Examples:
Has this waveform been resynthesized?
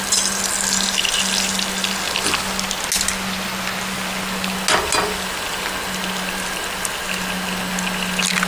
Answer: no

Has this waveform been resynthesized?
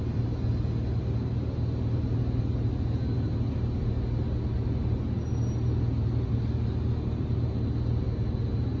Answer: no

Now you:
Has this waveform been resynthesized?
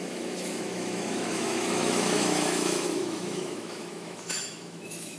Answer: yes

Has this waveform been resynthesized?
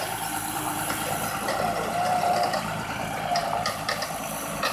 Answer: yes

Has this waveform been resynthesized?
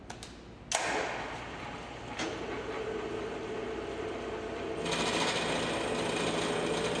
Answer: no